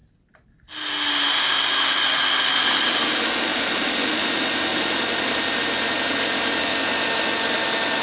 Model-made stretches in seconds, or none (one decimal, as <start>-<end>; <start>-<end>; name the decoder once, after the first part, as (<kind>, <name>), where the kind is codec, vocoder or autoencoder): none